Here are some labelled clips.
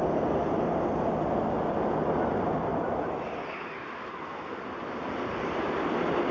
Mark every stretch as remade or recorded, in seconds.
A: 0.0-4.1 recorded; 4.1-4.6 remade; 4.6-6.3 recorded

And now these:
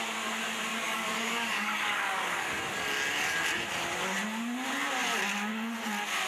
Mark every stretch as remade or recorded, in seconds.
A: 0.0-0.7 recorded; 0.7-2.6 remade; 2.6-6.3 recorded